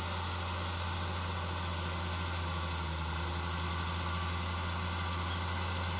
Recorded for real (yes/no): yes